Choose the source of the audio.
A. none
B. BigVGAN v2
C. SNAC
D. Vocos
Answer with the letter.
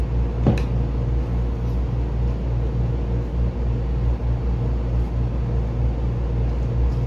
A